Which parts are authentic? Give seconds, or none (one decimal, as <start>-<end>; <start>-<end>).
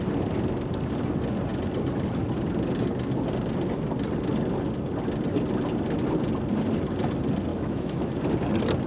0.0-7.5; 8.1-8.9